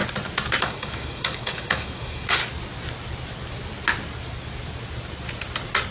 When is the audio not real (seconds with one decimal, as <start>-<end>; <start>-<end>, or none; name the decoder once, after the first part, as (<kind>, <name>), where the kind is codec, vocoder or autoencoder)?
0.6-2.4 (codec, DAC)